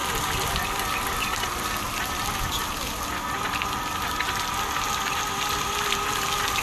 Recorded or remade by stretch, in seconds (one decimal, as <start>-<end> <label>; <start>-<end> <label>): 0.0-6.6 recorded